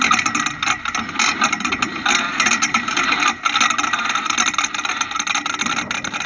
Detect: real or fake real